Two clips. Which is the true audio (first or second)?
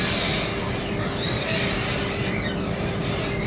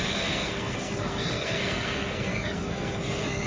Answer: first